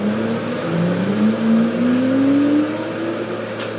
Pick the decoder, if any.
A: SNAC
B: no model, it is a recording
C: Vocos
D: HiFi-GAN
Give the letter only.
B